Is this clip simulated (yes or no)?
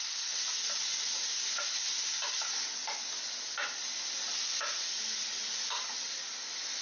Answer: no